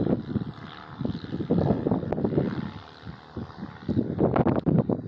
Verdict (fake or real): real